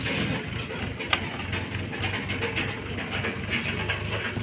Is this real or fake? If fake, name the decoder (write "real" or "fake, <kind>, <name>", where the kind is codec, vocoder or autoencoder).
real